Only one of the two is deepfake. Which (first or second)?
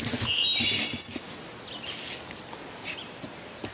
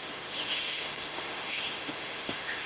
second